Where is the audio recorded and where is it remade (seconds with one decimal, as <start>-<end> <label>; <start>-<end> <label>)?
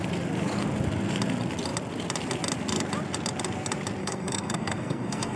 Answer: 0.0-4.0 recorded; 4.0-5.4 remade